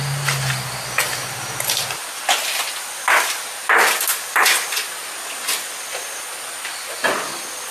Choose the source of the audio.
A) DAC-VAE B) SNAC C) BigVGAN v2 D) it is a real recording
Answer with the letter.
D